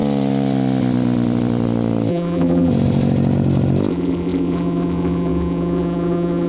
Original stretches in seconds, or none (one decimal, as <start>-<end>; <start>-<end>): 0.0-2.1; 2.7-3.9